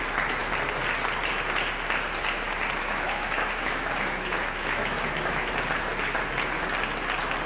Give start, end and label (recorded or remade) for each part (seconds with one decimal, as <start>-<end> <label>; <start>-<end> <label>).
0.0-2.8 recorded; 2.8-5.5 remade; 5.5-7.5 recorded